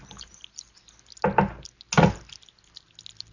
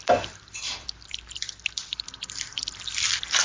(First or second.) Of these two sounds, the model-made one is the second